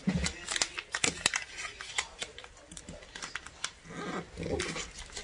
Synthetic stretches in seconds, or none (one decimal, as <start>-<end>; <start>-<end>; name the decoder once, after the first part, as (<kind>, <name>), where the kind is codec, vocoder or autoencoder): 1.9-2.8 (vocoder, BigVGAN v2)